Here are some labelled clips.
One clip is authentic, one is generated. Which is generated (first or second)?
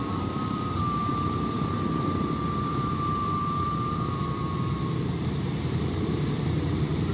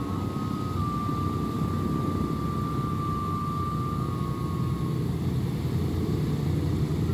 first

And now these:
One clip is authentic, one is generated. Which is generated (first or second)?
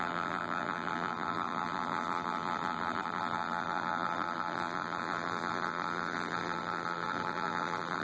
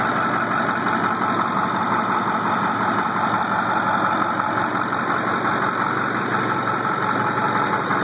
first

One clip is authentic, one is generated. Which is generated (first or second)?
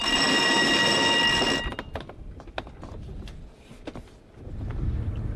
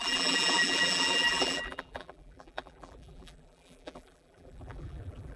second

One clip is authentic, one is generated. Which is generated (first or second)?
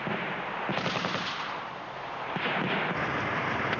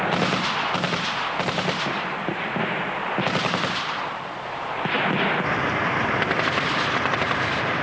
second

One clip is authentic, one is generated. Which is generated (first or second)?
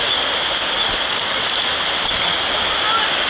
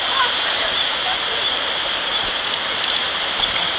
second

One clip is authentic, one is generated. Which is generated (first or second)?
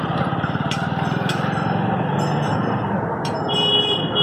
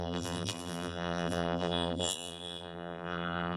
second